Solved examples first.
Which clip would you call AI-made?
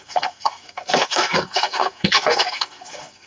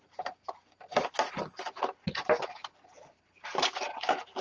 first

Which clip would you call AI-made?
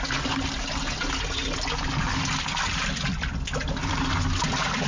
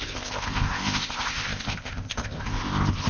second